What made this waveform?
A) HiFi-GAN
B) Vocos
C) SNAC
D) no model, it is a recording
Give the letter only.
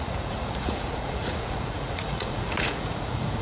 B